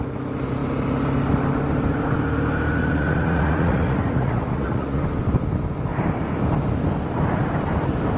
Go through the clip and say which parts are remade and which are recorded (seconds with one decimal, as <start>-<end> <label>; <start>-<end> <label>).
0.0-2.8 recorded; 2.8-5.0 remade; 5.0-8.2 recorded